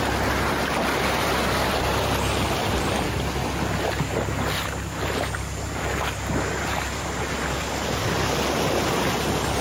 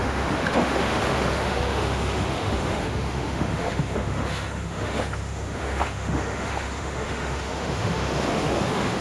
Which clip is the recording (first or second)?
first